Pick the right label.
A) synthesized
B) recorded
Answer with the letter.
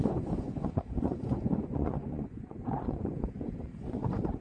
A